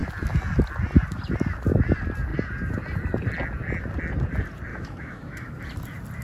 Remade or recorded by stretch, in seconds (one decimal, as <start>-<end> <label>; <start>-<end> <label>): 0.0-4.7 recorded; 4.7-5.6 remade; 5.6-6.2 recorded